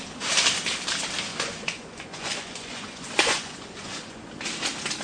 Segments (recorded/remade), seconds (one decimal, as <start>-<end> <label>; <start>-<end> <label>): 0.0-1.3 recorded; 1.3-4.3 remade; 4.3-5.0 recorded